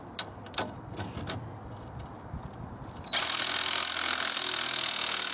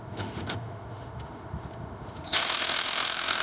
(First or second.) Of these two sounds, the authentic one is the first